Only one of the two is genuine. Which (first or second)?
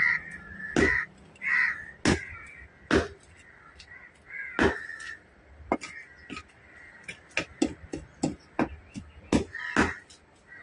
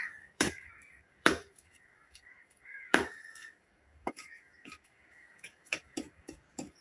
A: first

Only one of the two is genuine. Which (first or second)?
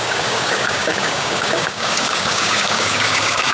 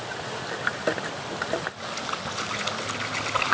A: second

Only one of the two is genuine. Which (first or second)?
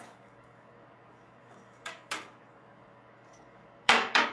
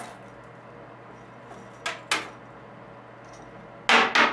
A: second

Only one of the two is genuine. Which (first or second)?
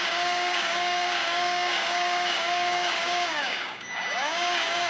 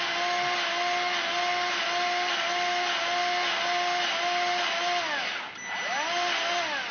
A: second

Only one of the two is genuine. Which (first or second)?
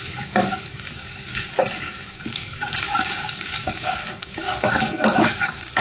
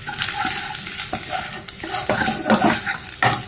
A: second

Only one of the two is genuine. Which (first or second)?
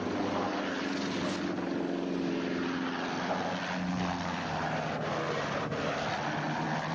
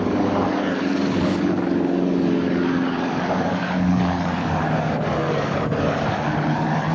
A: first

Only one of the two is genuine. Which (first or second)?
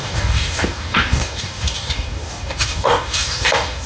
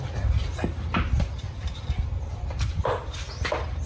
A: second